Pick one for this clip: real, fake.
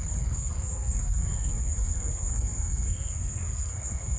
fake